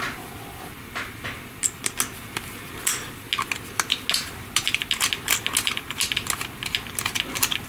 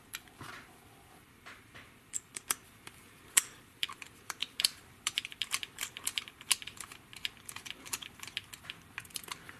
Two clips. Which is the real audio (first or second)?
first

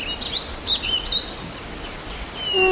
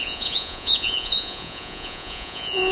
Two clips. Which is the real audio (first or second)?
first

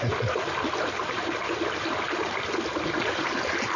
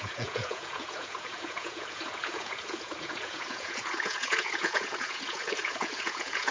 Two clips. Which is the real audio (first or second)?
first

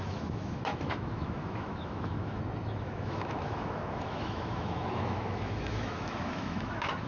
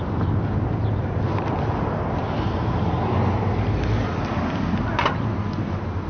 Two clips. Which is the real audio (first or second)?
second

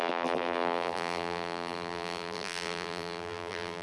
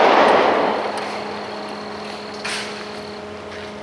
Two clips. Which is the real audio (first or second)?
second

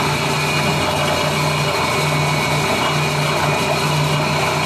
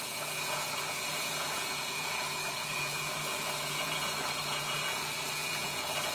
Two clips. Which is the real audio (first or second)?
first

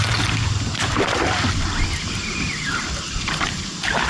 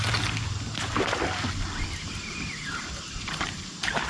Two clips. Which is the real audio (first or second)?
second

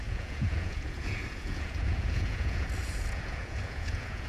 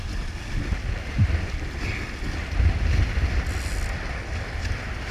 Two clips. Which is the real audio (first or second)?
second